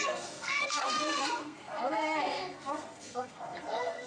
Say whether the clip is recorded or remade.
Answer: remade